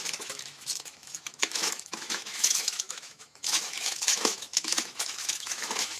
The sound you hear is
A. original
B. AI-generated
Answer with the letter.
B